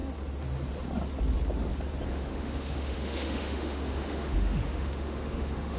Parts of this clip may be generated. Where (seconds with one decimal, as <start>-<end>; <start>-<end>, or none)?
2.1-5.8